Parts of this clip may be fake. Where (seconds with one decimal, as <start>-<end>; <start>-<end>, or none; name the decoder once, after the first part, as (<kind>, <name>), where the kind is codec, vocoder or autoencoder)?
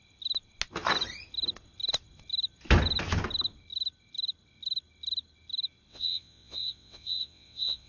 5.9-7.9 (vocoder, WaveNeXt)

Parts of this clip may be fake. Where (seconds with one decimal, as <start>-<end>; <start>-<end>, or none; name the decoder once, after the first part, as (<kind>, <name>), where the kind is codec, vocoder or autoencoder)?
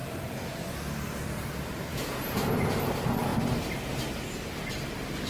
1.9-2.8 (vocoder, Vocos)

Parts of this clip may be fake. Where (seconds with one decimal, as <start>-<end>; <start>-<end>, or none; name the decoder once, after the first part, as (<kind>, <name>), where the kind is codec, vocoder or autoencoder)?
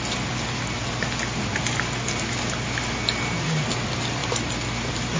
none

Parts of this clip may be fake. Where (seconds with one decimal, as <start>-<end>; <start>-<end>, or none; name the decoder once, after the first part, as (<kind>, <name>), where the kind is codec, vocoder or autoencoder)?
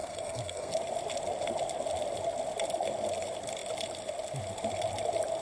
0.0-0.7 (codec, SNAC)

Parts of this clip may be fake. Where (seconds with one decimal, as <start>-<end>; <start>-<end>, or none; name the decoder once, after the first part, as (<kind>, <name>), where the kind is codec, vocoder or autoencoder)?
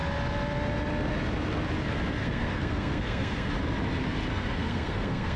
2.2-3.5 (codec, SNAC); 4.3-5.4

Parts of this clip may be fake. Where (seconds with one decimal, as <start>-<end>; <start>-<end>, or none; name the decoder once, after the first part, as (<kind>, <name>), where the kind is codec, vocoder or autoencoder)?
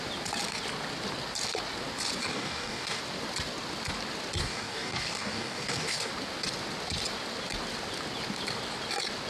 2.3-3.0 (codec, DAC); 4.4-6.1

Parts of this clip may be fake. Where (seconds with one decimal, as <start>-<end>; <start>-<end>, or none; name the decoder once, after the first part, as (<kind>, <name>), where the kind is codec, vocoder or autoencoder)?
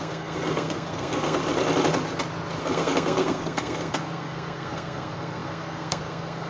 0.0-1.4 (codec, SNAC); 2.6-6.5